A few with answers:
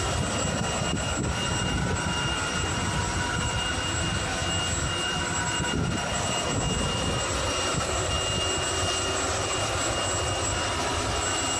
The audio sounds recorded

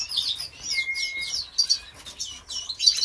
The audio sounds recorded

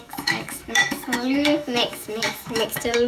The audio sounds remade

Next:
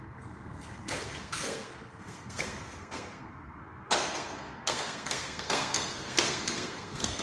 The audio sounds remade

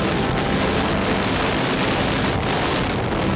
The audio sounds recorded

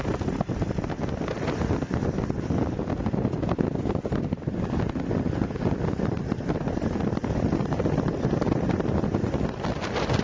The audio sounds recorded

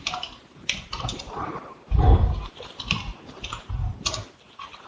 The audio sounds remade